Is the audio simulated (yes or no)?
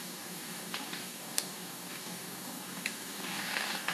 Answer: yes